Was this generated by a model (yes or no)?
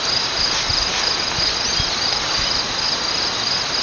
no